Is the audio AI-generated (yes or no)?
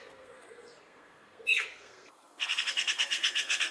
yes